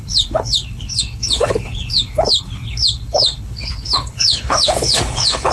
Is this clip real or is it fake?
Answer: fake